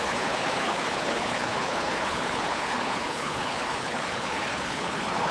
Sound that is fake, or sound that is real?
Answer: fake